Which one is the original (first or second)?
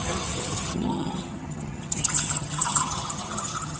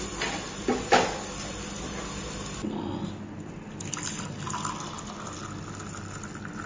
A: second